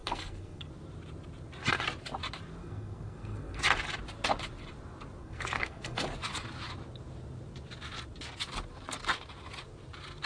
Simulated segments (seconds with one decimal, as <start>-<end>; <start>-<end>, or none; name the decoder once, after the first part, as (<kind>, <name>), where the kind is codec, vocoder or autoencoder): 0.0-0.7 (codec, SNAC); 2.6-3.6; 5.2-6.0